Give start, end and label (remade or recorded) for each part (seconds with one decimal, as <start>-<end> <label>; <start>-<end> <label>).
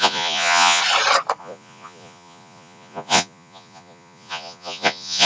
0.0-0.8 remade; 0.8-1.4 recorded; 1.4-5.2 remade